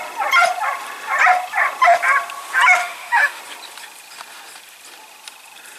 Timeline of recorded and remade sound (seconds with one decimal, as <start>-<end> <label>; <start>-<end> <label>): 0.0-2.8 recorded; 2.8-3.4 remade; 3.4-5.8 recorded